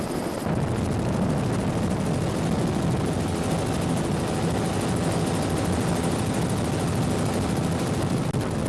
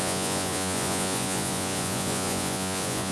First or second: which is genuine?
first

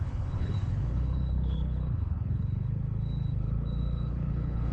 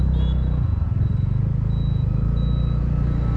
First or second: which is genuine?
second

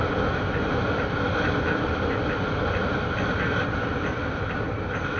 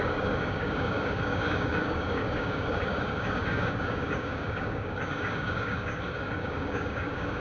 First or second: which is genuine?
first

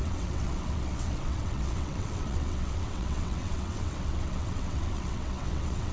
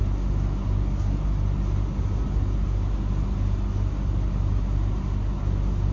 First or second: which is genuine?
second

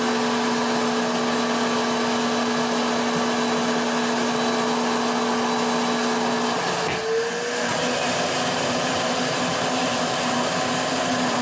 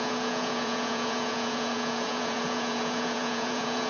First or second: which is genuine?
first